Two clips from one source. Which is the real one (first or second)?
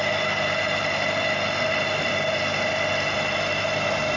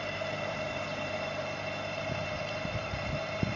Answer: first